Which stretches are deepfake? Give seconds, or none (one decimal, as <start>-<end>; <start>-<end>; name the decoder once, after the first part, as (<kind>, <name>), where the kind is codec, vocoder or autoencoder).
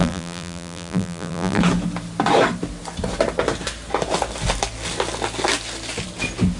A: 0.0-1.6 (vocoder, BigVGAN v2)